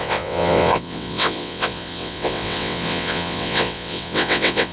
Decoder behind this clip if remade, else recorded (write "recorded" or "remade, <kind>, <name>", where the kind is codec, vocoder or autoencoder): remade, vocoder, WaveNeXt